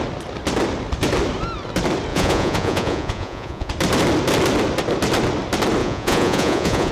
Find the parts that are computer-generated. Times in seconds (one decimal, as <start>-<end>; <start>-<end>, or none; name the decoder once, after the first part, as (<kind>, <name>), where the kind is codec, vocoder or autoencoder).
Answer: 2.1-3.7 (vocoder, Vocos); 5.8-6.9